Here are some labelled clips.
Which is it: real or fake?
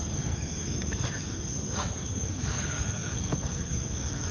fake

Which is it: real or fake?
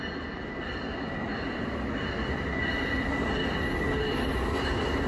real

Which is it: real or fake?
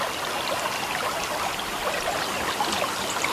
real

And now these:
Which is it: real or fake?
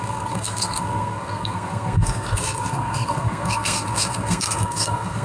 fake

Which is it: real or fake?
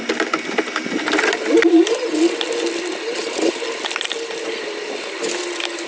real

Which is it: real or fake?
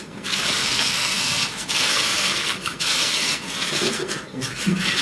fake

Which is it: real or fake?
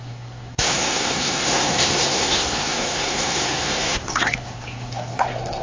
fake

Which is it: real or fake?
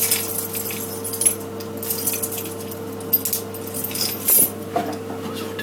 real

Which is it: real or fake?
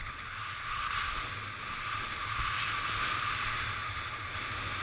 real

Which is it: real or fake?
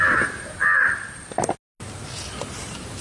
real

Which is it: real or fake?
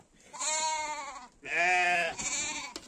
real